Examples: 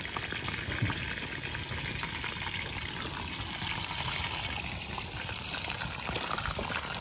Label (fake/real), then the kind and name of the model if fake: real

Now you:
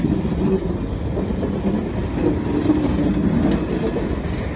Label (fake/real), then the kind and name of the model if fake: real